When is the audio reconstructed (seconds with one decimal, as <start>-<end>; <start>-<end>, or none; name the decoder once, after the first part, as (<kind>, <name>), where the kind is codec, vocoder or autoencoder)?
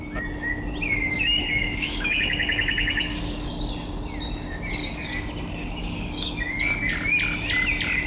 1.1-3.5 (codec, DAC); 4.8-5.3; 5.8-6.9